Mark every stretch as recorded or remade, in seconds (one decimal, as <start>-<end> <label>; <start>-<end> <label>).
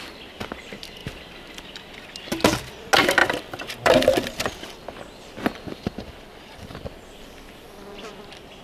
0.0-3.2 recorded; 3.2-8.1 remade; 8.1-8.6 recorded